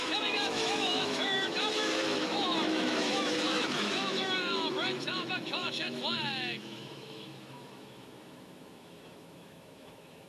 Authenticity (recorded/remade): remade